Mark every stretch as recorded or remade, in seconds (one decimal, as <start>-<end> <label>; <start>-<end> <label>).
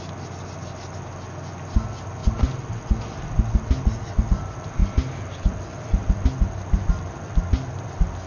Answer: 0.0-8.3 recorded